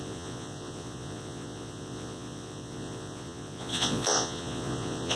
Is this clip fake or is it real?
fake